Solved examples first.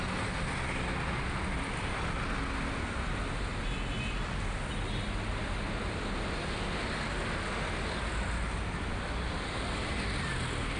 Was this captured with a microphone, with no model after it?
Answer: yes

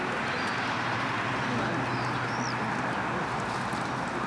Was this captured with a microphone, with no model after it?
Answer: yes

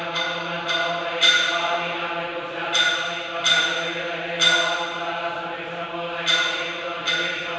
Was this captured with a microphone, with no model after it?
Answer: yes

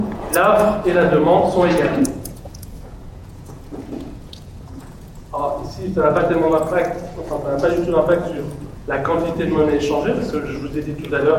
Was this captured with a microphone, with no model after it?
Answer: no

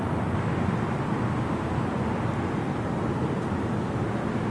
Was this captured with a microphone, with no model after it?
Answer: yes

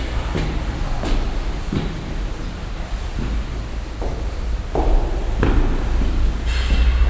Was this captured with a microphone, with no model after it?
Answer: yes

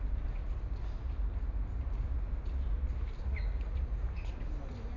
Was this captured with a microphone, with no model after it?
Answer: yes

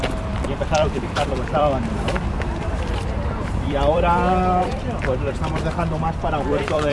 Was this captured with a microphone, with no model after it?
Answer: no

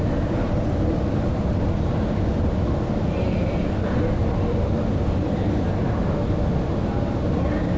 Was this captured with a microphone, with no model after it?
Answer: yes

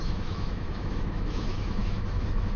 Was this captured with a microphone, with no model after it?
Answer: no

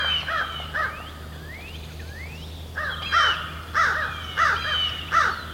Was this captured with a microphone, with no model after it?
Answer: yes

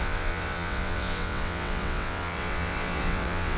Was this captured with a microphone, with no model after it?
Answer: no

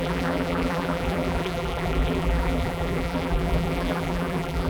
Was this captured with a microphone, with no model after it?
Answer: no